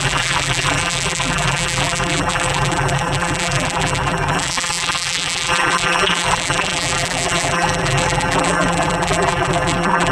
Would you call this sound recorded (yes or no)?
no